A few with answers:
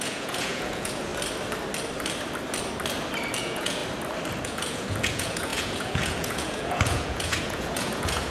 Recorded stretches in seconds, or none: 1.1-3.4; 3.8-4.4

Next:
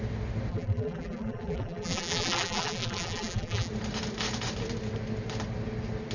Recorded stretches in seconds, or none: 0.0-0.5; 3.7-6.1

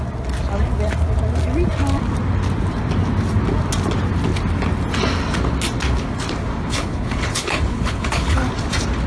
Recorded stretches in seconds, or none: 0.0-6.7; 8.4-9.1

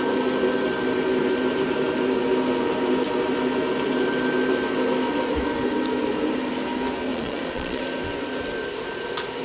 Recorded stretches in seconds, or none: 0.0-7.1; 7.8-9.4